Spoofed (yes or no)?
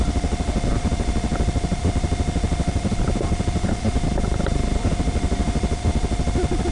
yes